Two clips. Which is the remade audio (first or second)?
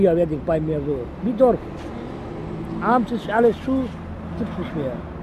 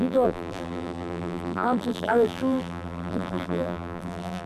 second